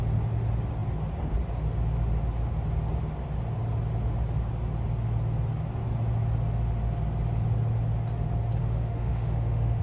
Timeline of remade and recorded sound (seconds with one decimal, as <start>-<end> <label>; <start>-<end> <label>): 0.0-8.6 recorded; 8.6-9.8 remade